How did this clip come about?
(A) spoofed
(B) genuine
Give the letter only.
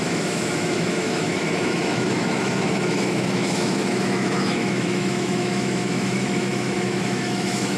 A